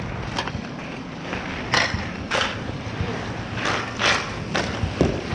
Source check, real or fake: real